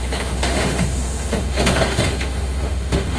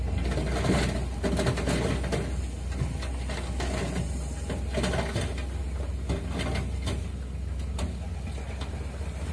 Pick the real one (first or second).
second